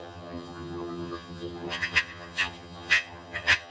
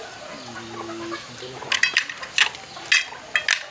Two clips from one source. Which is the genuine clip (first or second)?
second